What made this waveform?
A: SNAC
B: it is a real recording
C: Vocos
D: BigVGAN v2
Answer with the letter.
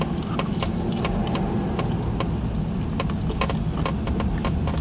B